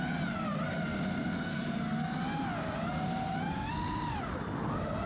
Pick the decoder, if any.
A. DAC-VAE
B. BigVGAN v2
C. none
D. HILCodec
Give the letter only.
C